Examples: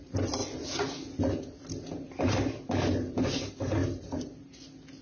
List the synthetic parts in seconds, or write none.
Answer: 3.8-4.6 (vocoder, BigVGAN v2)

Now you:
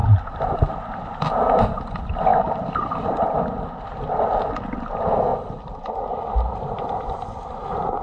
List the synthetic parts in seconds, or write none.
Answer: 2.3-3.0 (vocoder, BigVGAN v2); 5.3-8.0

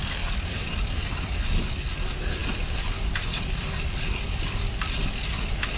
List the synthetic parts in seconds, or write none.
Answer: 0.0-0.6 (vocoder, BigVGAN v2)

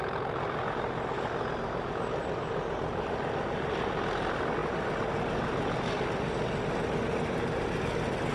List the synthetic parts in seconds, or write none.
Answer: none

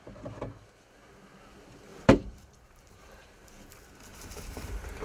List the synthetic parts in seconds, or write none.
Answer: 1.9-3.5 (vocoder, BigVGAN v2); 4.1-5.0

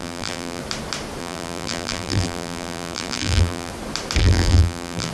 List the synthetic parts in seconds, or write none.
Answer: 0.0-0.6 (vocoder, BigVGAN v2); 1.2-3.7; 4.2-5.1

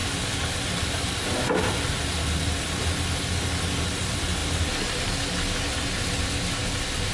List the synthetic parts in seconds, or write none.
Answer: 4.4-5.1 (vocoder, BigVGAN v2)